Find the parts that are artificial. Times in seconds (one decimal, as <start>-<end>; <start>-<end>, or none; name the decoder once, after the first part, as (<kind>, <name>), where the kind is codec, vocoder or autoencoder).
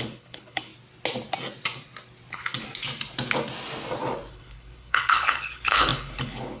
0.0-0.7 (codec, HILCodec); 4.3-6.6